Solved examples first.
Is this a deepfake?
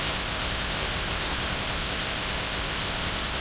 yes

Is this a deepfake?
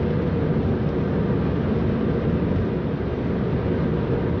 no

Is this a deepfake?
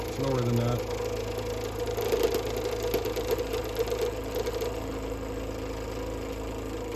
no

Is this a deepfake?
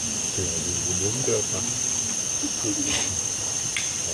no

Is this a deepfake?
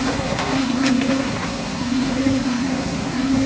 yes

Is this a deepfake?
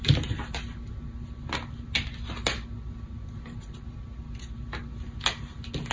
no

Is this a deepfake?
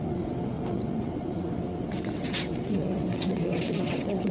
yes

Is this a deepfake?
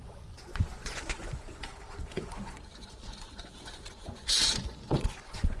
yes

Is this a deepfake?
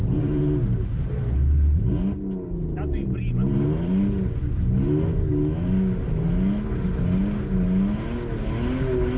no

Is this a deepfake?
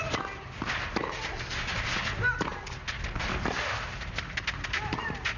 no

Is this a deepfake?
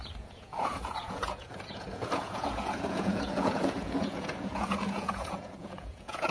yes